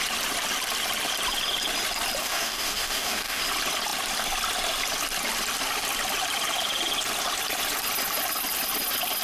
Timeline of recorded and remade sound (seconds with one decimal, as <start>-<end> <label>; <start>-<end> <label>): 0.0-2.2 recorded; 2.2-3.4 remade; 3.4-9.2 recorded

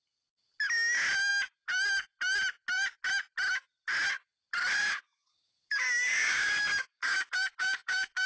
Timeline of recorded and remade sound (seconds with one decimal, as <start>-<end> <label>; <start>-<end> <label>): 0.0-4.8 recorded; 4.8-8.3 remade

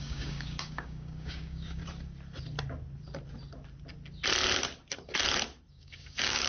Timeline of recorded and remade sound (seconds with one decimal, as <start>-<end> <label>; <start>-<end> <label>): 0.0-1.8 remade; 1.8-5.7 recorded; 5.7-6.5 remade

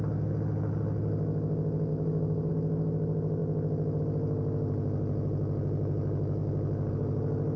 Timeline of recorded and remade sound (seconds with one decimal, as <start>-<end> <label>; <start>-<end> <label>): 0.0-1.9 recorded; 1.9-2.5 remade; 2.5-7.6 recorded

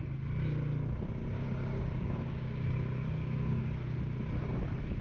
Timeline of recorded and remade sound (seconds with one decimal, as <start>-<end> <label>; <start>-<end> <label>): 0.0-1.2 recorded; 1.2-4.0 remade; 4.0-5.0 recorded

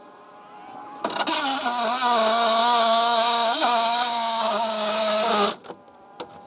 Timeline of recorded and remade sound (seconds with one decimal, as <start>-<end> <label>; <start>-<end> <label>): 0.0-2.6 recorded; 2.6-5.3 remade; 5.3-6.5 recorded